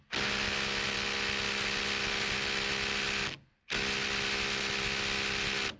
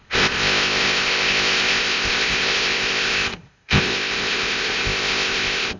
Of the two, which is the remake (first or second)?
second